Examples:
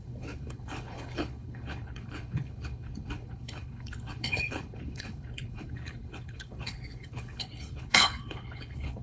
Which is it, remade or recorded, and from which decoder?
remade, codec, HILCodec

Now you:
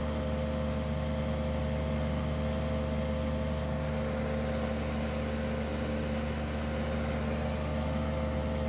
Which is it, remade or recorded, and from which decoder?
recorded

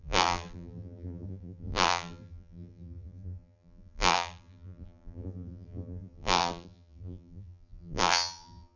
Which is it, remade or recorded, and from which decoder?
remade, vocoder, BigVGAN v2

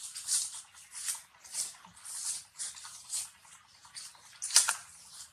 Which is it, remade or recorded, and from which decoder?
recorded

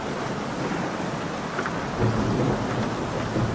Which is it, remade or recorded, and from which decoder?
recorded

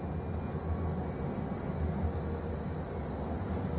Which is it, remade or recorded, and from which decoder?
recorded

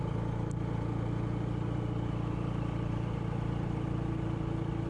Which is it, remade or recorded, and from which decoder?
recorded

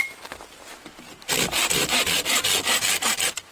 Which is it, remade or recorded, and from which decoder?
recorded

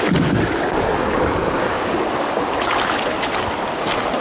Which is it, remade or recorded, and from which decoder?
recorded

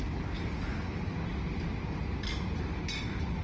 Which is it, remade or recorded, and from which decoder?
recorded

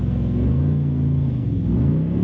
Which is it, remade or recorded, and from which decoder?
remade, codec, SNAC